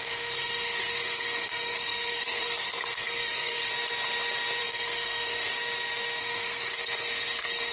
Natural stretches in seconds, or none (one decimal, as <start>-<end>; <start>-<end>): 3.7-4.6; 5.5-6.2